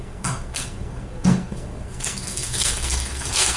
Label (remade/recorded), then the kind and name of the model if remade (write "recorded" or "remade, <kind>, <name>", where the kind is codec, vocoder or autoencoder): remade, codec, SNAC